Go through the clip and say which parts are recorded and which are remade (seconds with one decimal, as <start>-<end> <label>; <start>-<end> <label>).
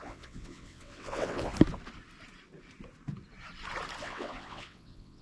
0.0-1.5 remade; 1.5-4.0 recorded; 4.0-5.2 remade